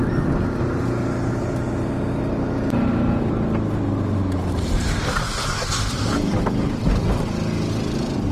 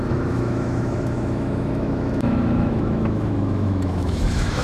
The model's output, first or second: second